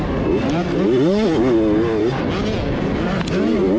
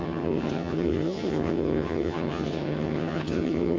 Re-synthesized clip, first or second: second